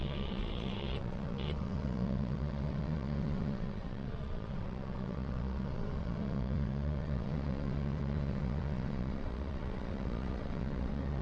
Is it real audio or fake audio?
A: fake